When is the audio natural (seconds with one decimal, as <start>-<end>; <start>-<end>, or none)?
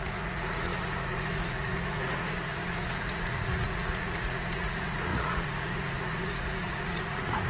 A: none